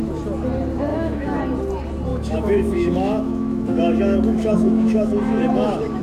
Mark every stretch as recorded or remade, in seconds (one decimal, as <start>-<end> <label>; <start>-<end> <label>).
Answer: 0.0-0.9 recorded; 0.9-1.4 remade; 1.4-2.1 recorded; 2.1-6.0 remade